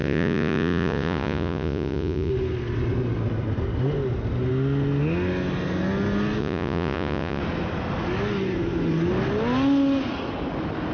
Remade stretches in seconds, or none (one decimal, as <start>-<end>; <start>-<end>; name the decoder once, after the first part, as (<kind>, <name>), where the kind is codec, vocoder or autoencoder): 0.0-2.3 (vocoder, Vocos); 6.4-7.4

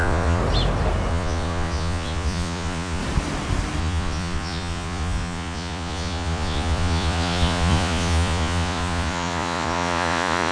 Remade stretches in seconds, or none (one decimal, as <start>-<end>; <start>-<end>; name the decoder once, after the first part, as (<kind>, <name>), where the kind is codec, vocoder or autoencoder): 0.0-0.4 (vocoder, Vocos); 1.1-3.0; 3.8-10.5

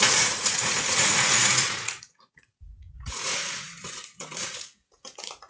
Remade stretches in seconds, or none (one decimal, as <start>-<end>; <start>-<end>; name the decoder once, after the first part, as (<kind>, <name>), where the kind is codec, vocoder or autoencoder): 0.0-5.5 (vocoder, Vocos)